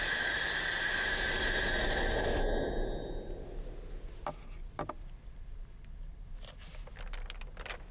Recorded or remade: recorded